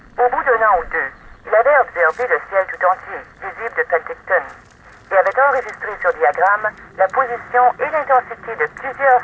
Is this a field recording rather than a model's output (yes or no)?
yes